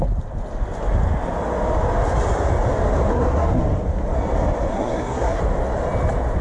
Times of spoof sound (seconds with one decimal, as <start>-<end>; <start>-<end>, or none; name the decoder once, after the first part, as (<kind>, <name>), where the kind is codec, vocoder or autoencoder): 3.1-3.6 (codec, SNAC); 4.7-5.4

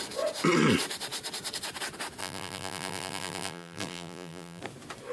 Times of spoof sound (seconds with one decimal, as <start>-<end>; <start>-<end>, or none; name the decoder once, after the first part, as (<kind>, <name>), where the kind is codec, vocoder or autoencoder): 2.2-4.6 (vocoder, BigVGAN v2)

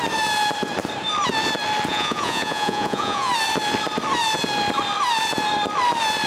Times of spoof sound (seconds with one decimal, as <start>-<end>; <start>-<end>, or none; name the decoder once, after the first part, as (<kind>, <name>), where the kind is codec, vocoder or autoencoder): 1.9-3.3 (vocoder, Vocos)

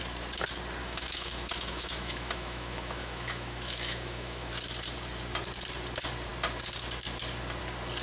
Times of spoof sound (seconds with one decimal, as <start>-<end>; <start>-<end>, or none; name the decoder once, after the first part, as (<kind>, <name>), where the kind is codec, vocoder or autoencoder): 0.8-4.5 (autoencoder, DAC-VAE)